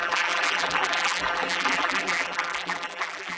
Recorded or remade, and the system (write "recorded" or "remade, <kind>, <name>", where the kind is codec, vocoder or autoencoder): remade, vocoder, BigVGAN v2